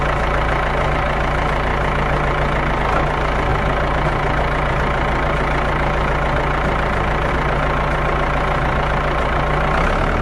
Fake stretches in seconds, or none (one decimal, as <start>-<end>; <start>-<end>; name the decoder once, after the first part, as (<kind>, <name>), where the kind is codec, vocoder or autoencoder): none